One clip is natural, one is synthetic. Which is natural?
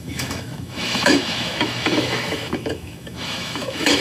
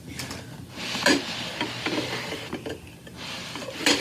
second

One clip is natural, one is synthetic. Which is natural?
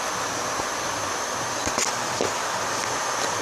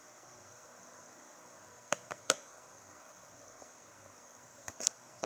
first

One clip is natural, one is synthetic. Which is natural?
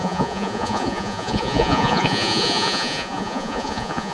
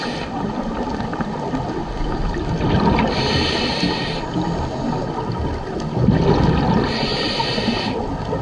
second